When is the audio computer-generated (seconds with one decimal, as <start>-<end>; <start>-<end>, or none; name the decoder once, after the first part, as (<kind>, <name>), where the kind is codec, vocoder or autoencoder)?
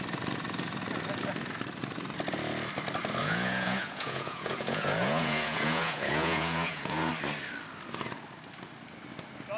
3.2-7.1 (vocoder, Vocos)